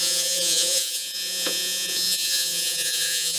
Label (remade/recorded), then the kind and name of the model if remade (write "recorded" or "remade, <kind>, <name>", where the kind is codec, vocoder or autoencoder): remade, vocoder, Vocos